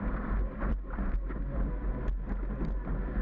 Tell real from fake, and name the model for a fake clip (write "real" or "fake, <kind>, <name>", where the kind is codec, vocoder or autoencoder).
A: real